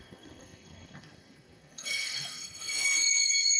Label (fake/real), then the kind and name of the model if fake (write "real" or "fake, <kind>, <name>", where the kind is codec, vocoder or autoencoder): fake, codec, SNAC